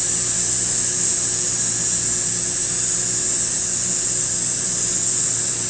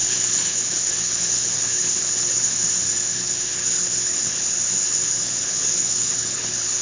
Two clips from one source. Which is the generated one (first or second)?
second